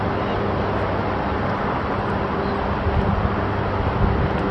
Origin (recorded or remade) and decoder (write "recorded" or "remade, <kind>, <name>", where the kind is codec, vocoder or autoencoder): recorded